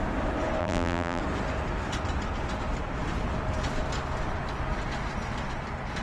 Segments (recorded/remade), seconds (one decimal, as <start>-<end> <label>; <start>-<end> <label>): 0.0-0.6 recorded; 0.6-1.2 remade; 1.2-6.0 recorded